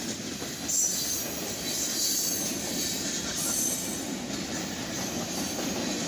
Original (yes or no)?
yes